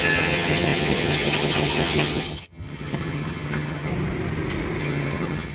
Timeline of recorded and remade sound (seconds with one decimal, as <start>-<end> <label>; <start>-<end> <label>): 0.0-3.9 remade; 3.9-4.8 recorded; 4.8-5.5 remade